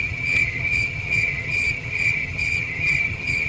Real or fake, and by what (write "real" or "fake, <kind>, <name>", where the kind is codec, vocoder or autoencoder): fake, vocoder, HiFi-GAN